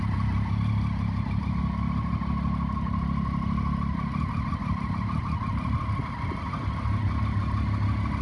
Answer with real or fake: real